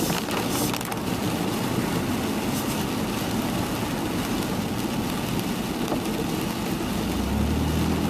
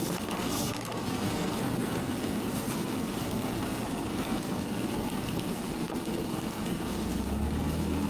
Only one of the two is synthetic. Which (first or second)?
second